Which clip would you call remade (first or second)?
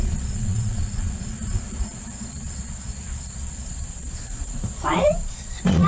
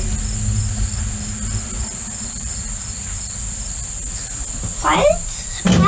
first